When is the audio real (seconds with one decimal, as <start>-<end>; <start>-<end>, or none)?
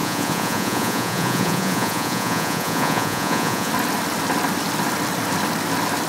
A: 3.7-6.1